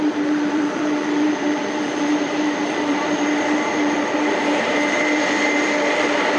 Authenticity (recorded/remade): remade